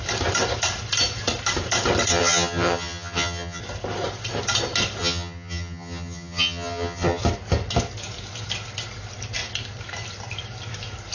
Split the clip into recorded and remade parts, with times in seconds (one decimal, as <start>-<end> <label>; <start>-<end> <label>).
0.0-2.1 recorded; 2.1-3.6 remade; 3.6-5.0 recorded; 5.0-7.2 remade; 7.2-11.1 recorded